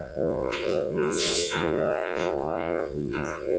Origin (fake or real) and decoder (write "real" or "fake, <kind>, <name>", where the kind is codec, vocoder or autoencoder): fake, vocoder, Vocos